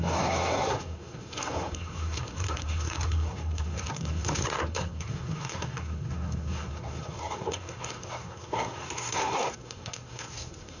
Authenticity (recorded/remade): remade